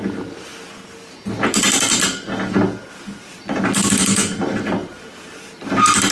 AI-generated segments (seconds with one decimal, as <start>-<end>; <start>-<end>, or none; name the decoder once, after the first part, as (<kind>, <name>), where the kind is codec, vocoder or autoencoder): none